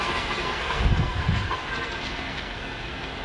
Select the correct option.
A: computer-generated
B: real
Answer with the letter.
A